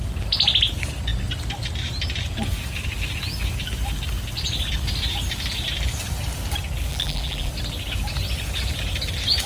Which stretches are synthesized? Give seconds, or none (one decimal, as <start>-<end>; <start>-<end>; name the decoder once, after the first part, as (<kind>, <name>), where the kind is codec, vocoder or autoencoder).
6.9-7.5 (vocoder, BigVGAN v2)